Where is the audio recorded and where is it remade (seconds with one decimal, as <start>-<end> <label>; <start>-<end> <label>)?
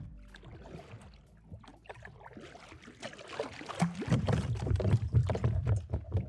0.0-6.3 recorded